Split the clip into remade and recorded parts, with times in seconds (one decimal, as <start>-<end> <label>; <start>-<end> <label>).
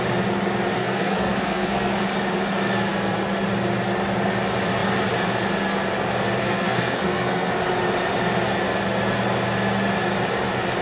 0.0-0.8 recorded; 0.8-2.0 remade; 2.0-6.4 recorded; 6.4-7.5 remade; 7.5-10.8 recorded